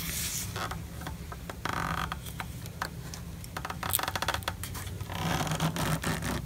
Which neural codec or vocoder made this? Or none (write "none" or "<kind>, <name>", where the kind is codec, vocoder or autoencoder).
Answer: none